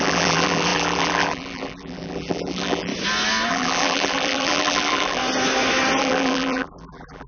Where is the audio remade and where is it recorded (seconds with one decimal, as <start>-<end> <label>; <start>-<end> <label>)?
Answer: 0.0-2.9 remade; 2.9-3.5 recorded; 3.5-5.2 remade; 5.2-6.0 recorded; 6.0-7.3 remade